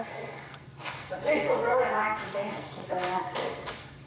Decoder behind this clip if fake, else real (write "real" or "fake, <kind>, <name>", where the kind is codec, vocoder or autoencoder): fake, codec, SNAC